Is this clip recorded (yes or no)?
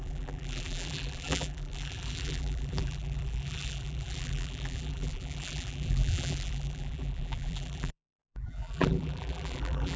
no